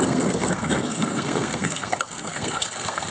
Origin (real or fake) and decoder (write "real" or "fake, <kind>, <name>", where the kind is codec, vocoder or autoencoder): fake, codec, SNAC